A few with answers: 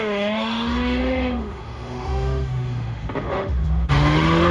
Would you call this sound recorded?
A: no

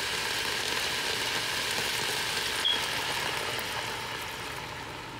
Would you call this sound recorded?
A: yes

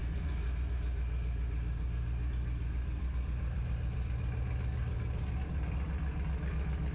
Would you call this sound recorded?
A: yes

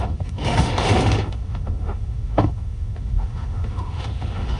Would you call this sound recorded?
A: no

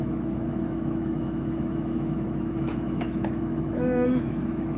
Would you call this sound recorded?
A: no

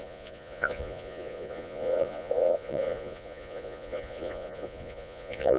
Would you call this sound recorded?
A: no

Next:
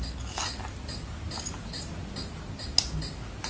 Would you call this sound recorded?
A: yes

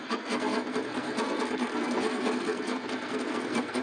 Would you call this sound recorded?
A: no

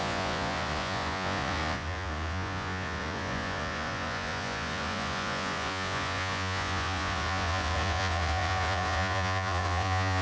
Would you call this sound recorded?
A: no